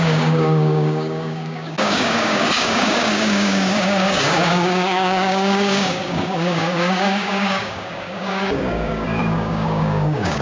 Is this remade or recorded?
remade